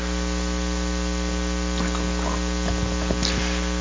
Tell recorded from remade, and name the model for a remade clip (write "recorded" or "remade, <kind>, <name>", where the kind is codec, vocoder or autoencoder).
recorded